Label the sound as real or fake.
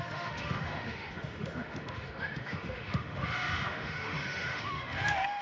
fake